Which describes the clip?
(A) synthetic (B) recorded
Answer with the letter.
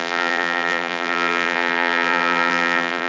A